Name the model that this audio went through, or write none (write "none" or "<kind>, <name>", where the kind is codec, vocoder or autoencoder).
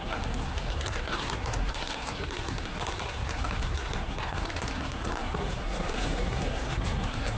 codec, SNAC